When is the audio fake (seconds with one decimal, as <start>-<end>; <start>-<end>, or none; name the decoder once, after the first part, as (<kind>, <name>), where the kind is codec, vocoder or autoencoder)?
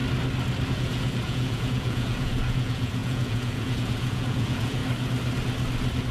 0.7-4.8 (vocoder, Vocos)